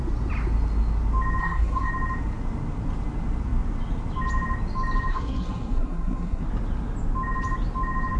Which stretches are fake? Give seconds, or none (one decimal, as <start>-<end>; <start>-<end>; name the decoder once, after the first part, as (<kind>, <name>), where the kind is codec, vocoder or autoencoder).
1.4-1.9 (codec, SNAC); 5.1-6.4